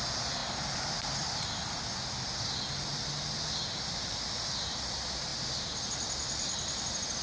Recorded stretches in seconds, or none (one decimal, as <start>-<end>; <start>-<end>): 0.0-7.2